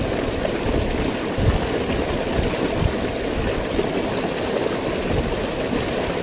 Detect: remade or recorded recorded